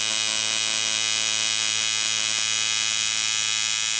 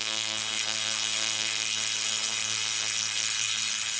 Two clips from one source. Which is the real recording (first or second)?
first